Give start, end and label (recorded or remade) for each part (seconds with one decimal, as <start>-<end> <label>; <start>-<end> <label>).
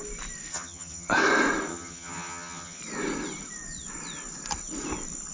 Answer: 0.0-0.5 recorded; 0.5-1.1 remade; 1.1-1.7 recorded; 1.7-2.8 remade; 2.8-5.3 recorded